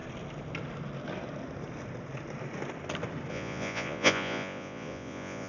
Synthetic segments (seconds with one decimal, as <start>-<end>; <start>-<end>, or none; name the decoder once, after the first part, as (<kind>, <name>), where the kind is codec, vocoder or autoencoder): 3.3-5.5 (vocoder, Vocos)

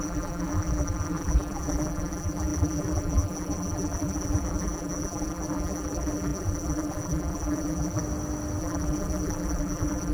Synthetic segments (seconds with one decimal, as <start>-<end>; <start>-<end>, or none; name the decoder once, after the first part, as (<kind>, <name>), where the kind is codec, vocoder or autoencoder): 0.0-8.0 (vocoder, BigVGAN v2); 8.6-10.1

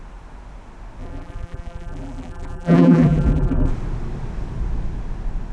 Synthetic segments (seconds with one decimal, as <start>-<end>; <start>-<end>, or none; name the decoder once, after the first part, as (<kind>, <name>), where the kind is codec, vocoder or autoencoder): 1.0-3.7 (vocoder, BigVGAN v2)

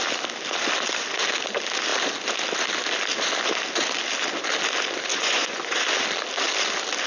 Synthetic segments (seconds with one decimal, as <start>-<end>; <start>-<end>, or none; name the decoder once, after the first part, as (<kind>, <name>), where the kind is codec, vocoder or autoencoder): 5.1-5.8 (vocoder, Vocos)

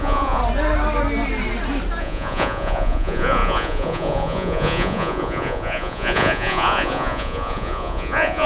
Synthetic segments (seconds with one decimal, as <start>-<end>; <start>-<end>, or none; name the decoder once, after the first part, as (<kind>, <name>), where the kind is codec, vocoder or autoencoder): 0.0-0.4 (vocoder, Vocos); 2.0-8.5

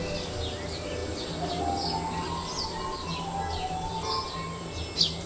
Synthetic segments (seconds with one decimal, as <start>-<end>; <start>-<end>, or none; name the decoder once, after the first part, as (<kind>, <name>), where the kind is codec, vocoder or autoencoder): none

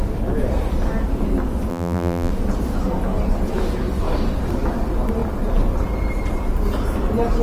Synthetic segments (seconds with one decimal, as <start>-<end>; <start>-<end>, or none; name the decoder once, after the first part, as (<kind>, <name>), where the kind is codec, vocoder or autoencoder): 1.7-2.3 (vocoder, BigVGAN v2)

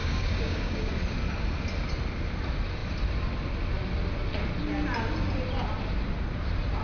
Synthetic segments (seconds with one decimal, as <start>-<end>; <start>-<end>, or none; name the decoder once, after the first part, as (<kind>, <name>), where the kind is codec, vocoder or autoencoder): 0.0-0.9 (codec, DAC)